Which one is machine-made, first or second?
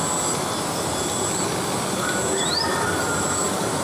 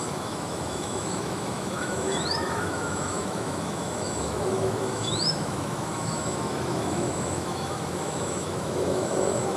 second